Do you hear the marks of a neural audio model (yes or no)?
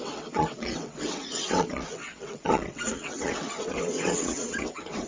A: yes